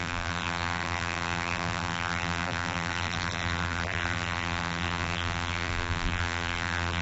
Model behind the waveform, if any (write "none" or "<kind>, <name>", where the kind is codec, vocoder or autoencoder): vocoder, BigVGAN v2